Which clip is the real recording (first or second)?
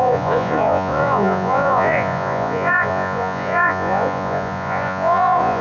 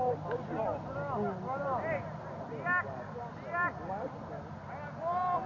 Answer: second